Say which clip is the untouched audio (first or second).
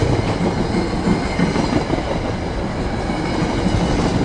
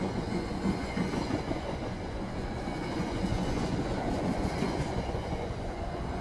first